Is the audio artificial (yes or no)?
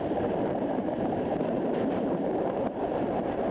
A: yes